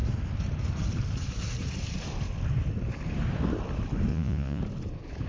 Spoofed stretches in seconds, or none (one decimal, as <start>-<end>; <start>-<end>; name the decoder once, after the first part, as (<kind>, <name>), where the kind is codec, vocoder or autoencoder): 4.1-4.6 (vocoder, Vocos)